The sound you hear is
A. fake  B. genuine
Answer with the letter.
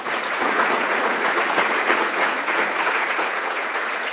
A